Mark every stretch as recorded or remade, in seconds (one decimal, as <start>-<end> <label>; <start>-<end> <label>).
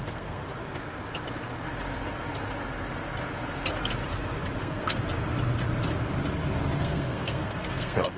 0.0-0.4 remade; 0.4-4.6 recorded; 4.6-5.0 remade; 5.0-6.8 recorded; 6.8-8.2 remade